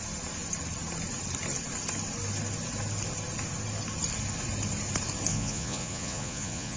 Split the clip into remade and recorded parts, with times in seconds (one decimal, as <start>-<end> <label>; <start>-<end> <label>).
0.0-5.3 recorded; 5.3-6.8 remade